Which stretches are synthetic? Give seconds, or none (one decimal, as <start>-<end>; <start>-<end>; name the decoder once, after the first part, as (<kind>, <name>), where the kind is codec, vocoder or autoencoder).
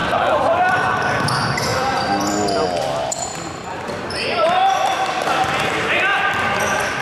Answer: 1.7-5.9 (vocoder, BigVGAN v2)